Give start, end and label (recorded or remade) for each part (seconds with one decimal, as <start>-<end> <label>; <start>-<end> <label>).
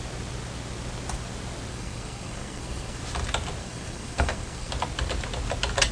0.0-1.7 recorded; 1.7-3.0 remade; 3.0-3.6 recorded; 3.6-4.7 remade; 4.7-5.9 recorded